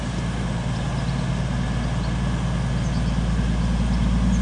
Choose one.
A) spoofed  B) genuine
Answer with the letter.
B